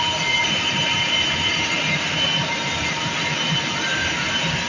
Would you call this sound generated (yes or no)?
no